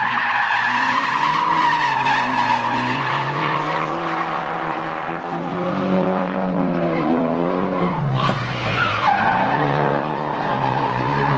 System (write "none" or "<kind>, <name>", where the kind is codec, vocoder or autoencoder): vocoder, Vocos